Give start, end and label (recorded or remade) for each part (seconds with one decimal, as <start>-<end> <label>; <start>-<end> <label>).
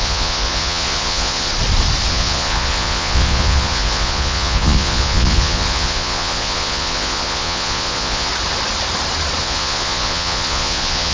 0.0-1.5 remade; 1.5-2.1 recorded; 2.1-8.3 remade; 8.3-9.4 recorded; 9.4-11.1 remade